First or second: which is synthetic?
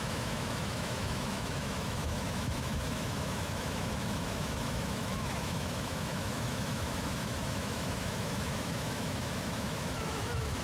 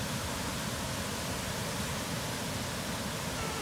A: first